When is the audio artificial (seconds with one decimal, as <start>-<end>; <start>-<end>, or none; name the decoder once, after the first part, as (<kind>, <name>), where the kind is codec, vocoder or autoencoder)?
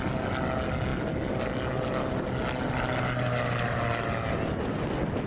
none